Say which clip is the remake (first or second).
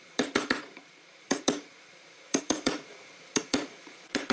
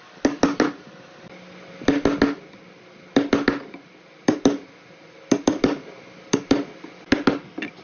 first